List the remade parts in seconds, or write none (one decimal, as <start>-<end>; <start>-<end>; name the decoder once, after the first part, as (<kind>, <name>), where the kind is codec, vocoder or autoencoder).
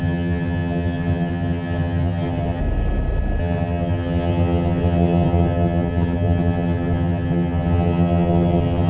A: 0.0-2.6 (vocoder, HiFi-GAN); 3.4-8.9